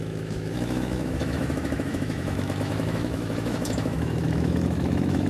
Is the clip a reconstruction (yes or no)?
yes